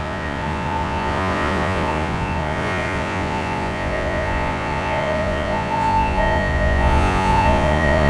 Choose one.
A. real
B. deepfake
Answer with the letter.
B